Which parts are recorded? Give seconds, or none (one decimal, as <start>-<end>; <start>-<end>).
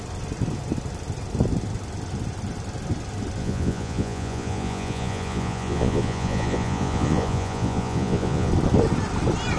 0.0-3.4; 8.5-9.6